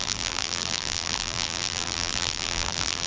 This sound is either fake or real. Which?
fake